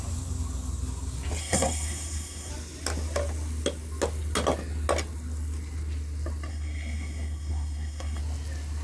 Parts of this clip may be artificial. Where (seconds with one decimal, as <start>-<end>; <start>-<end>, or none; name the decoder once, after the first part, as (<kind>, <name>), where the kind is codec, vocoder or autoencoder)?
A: 1.4-2.5 (codec, SNAC); 6.5-8.2

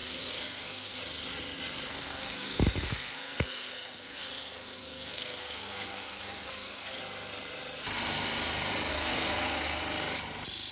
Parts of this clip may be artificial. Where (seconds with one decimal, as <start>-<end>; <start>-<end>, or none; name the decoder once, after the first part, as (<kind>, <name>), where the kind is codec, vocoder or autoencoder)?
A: 0.0-1.0 (codec, SNAC); 1.9-7.0; 8.9-9.8

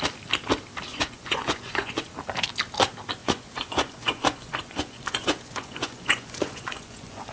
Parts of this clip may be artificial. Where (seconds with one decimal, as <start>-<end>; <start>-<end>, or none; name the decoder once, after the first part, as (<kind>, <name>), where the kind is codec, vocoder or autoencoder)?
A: 0.9-2.1 (vocoder, Vocos); 3.2-7.3

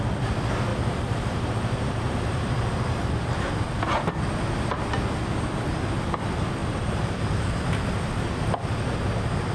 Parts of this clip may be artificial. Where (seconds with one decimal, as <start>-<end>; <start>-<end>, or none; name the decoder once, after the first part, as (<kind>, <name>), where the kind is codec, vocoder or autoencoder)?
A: 0.7-3.7 (vocoder, BigVGAN v2); 6.6-8.1

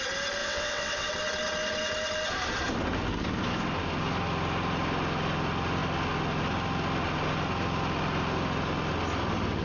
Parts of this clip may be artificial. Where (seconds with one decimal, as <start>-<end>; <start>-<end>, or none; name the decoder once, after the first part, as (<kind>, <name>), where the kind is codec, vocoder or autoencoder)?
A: 0.4-1.1 (vocoder, WaveNeXt)

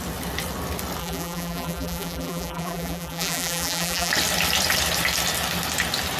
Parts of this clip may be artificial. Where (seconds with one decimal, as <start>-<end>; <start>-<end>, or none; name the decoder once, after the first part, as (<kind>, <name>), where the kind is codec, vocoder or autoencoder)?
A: 1.0-4.1 (vocoder, BigVGAN v2)

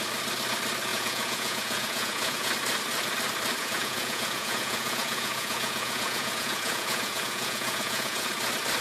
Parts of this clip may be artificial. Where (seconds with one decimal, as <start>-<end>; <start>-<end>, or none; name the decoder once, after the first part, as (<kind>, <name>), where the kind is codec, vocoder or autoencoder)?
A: 0.9-2.5 (vocoder, Vocos); 3.6-8.3